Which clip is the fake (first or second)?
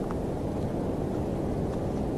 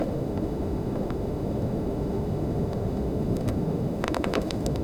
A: second